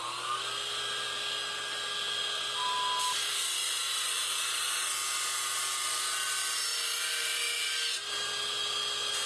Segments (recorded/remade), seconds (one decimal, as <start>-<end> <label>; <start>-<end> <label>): 0.0-9.3 recorded